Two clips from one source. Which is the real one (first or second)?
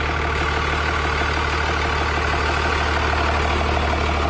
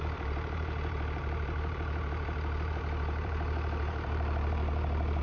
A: first